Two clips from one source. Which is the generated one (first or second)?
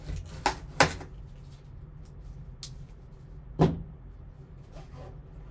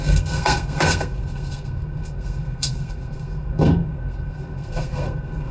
second